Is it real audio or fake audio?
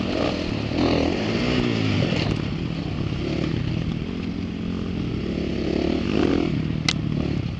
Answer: real